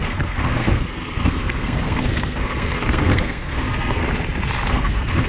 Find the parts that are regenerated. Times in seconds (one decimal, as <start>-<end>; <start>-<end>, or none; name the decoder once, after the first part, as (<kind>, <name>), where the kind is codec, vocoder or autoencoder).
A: 0.0-4.0 (codec, SNAC); 4.7-5.3